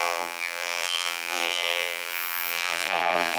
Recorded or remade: remade